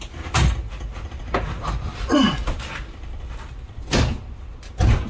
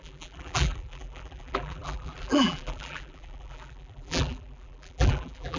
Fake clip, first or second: second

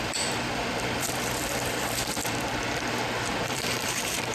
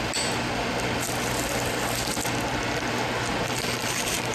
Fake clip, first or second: first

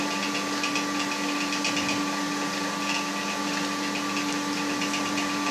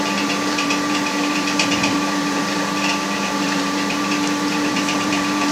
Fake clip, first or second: second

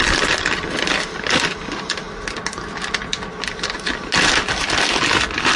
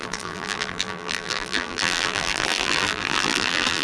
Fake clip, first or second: second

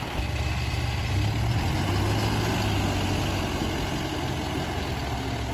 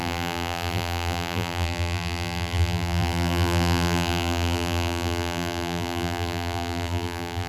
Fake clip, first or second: second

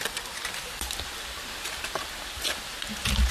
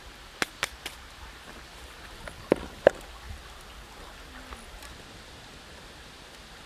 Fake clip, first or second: first